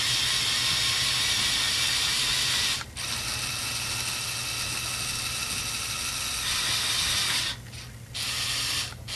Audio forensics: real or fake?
real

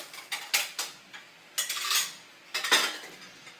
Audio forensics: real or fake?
real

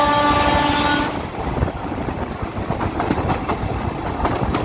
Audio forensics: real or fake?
real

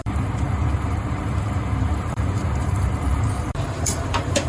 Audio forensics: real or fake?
fake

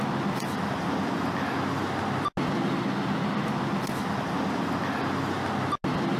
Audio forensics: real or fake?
real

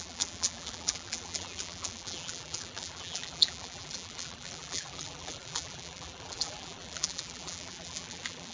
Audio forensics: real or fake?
fake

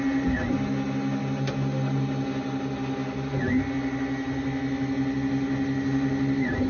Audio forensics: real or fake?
real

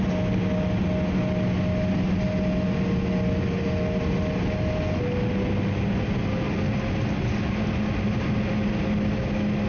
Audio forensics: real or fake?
real